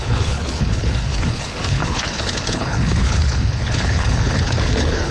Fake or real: fake